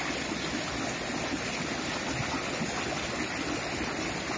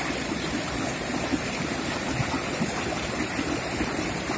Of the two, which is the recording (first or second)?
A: first